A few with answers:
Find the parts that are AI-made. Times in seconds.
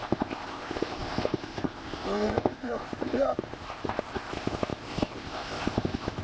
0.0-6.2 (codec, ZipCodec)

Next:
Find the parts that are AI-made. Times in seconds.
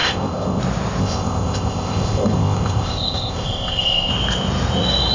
0.0-0.6 (codec, ZipCodec); 1.0-4.1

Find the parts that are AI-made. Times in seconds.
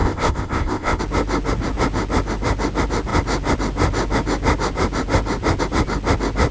0.0-1.0 (codec, ZipCodec)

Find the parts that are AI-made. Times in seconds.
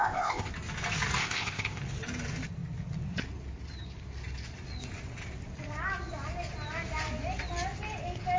0.0-0.5 (codec, ZipCodec); 1.2-1.8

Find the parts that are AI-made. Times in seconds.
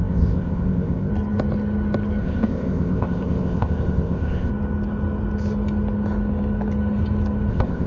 0.0-1.1 (codec, ZipCodec); 2.2-4.5; 7.5-7.9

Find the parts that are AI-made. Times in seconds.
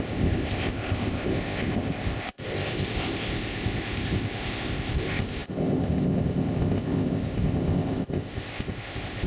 0.0-9.3 (codec, ZipCodec)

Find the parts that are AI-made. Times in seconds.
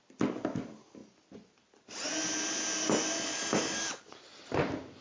none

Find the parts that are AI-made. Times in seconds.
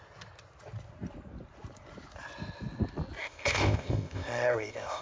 3.2-5.0 (codec, ZipCodec)